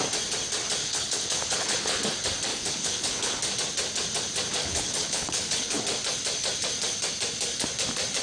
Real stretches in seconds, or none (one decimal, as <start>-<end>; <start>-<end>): 0.0-0.8; 2.0-2.5; 3.4-4.6; 5.8-8.2